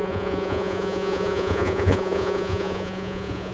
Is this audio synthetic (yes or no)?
yes